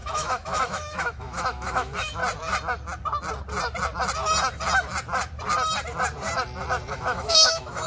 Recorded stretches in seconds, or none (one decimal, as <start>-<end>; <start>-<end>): 2.2-6.9